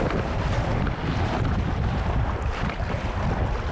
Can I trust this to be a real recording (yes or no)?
yes